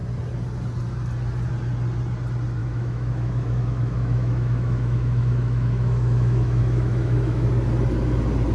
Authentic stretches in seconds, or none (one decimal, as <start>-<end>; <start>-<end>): 0.0-2.6; 7.5-8.5